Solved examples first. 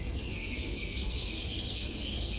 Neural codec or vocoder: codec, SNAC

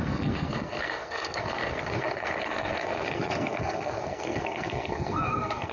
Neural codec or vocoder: codec, SNAC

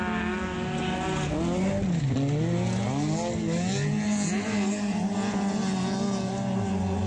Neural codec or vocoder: none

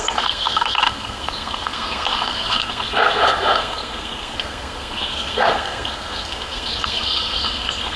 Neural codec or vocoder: codec, SNAC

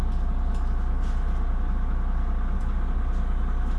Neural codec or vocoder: none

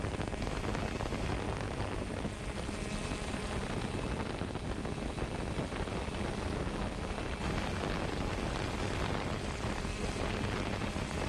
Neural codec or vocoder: none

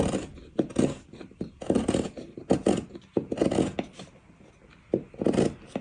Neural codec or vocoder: none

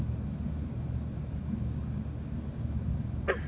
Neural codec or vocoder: none